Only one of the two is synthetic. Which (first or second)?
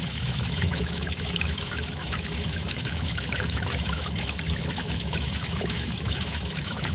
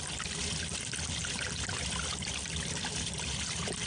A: first